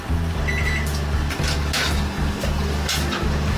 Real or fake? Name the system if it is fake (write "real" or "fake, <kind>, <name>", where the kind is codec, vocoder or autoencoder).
real